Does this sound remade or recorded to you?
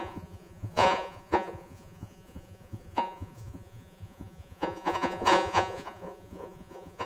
remade